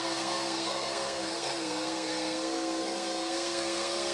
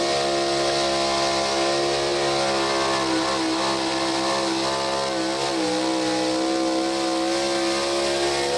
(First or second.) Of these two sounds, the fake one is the first